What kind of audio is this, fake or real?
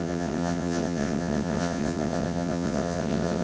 fake